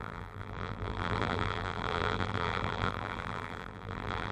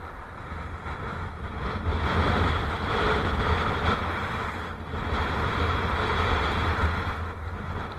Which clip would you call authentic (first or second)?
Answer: second